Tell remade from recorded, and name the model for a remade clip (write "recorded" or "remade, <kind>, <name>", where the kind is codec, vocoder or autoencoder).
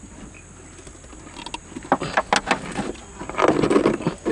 recorded